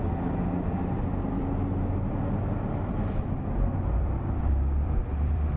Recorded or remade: remade